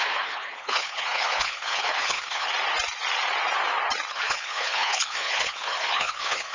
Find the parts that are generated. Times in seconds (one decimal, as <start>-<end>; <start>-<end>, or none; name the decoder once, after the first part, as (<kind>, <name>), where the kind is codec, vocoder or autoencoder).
0.0-2.5 (codec, HILCodec); 4.1-6.5